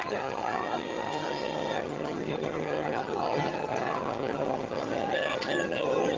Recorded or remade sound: remade